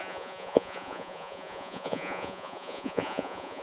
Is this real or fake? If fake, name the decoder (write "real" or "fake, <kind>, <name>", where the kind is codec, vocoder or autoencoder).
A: fake, vocoder, Vocos